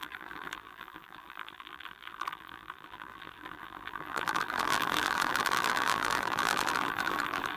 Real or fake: fake